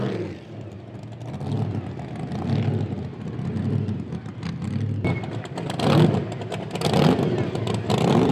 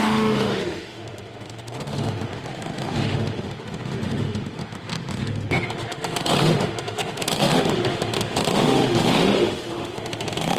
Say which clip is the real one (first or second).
first